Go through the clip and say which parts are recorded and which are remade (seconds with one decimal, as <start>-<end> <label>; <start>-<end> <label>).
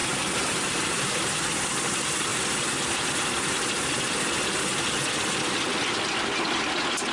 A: 0.0-2.3 remade; 2.3-6.6 recorded; 6.6-7.1 remade